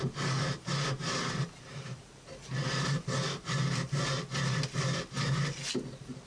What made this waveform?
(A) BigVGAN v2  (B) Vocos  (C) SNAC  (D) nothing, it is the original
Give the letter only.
D